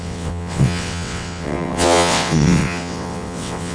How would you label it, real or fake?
fake